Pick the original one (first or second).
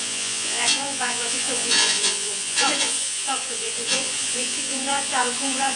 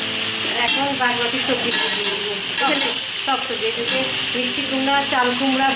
second